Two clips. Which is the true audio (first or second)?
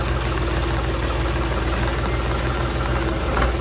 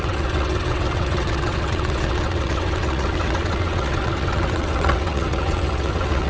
first